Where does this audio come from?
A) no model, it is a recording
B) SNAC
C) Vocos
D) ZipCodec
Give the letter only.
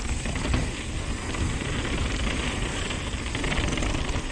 A